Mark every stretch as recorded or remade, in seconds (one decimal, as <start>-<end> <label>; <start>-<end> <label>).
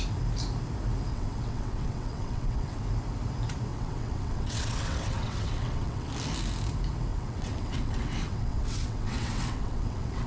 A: 0.0-1.1 recorded; 1.1-2.8 remade; 2.8-3.7 recorded; 3.7-6.1 remade; 6.1-7.1 recorded; 7.1-10.3 remade